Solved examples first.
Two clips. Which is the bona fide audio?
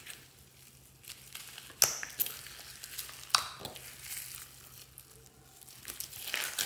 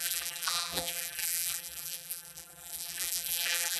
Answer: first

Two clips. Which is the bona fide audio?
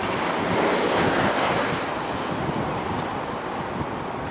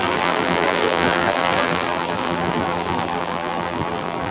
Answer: first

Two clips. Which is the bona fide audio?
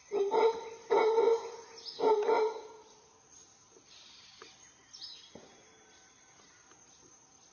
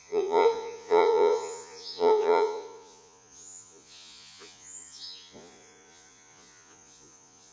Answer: first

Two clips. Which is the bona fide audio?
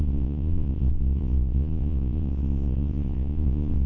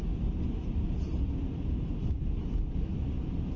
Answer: second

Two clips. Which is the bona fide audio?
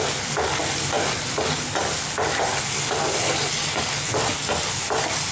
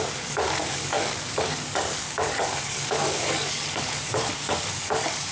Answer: first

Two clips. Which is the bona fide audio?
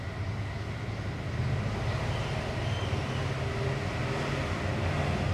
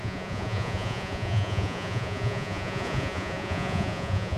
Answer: first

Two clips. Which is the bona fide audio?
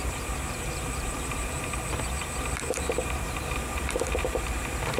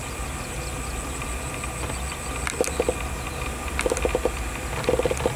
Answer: second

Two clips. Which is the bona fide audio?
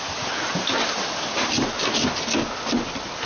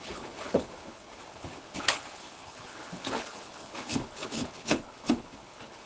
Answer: first